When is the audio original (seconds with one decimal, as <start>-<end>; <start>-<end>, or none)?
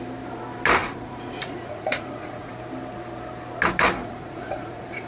0.0-0.8; 2.5-4.0